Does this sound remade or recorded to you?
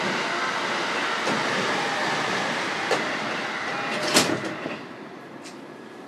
recorded